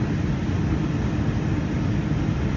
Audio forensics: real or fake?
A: real